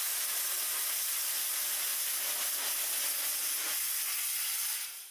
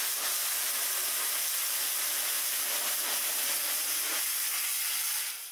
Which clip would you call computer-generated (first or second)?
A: second